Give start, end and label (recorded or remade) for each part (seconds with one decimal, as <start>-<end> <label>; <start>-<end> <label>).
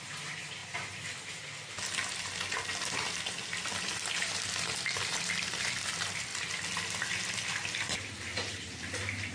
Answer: 0.0-9.3 recorded